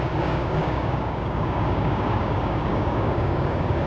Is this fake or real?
fake